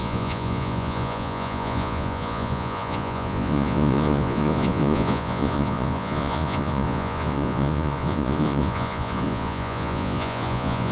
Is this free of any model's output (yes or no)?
no